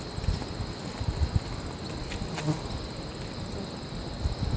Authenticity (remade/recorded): recorded